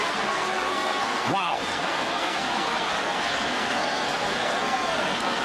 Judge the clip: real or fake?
fake